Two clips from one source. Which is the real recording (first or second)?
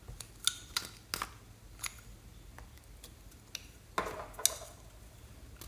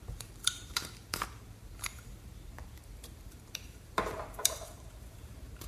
first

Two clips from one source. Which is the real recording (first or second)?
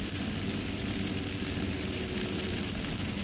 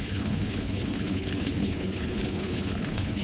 first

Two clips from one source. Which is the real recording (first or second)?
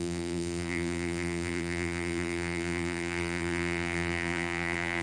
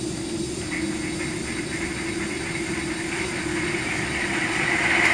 second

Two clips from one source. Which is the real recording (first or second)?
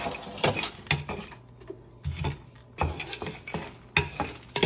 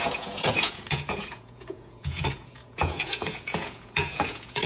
first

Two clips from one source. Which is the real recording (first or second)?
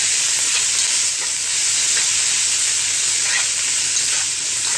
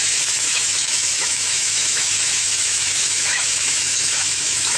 first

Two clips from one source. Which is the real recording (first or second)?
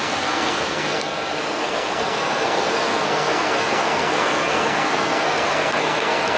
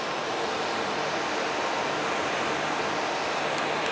second